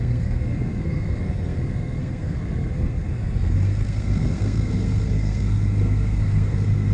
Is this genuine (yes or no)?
no